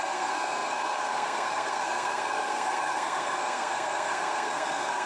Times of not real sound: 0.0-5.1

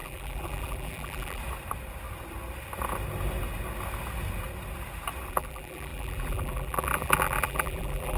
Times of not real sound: 0.0-1.4; 5.3-8.2

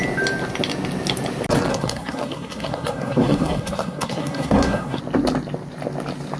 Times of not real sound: 1.7-5.0

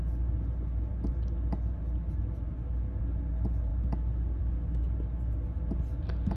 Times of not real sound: none

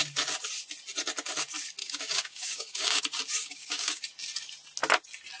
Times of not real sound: 1.8-3.0; 3.4-4.0

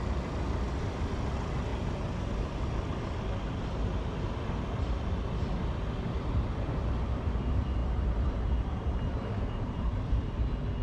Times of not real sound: 7.8-10.2

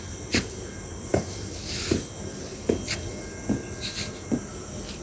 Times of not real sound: none

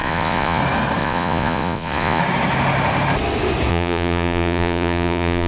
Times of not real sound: 0.0-0.6; 1.0-2.2; 3.7-5.5